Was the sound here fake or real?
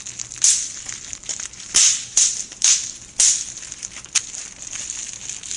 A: real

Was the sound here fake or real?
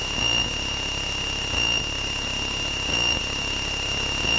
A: real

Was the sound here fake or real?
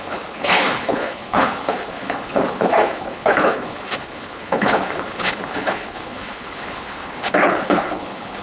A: fake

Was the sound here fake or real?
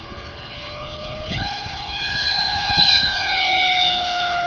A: fake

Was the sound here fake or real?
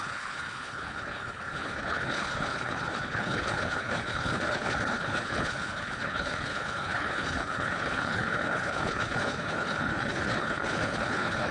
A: fake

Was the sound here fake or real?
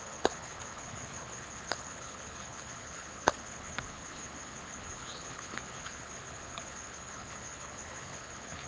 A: fake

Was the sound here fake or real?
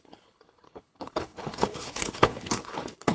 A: fake